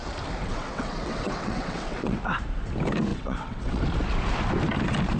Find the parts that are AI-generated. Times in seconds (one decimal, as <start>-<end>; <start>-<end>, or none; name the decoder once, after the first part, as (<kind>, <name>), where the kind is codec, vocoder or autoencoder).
0.4-2.2 (vocoder, WaveNeXt); 3.1-3.8